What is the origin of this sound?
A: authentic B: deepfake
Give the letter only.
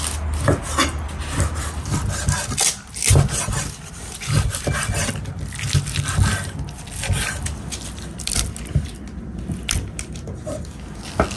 A